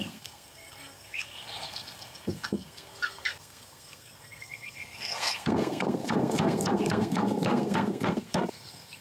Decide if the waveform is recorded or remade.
remade